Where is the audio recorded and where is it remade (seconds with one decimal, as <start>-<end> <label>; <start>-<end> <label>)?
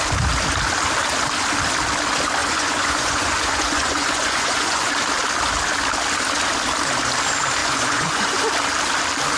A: 0.0-2.4 recorded; 2.4-4.9 remade; 4.9-7.6 recorded; 7.6-8.4 remade; 8.4-9.4 recorded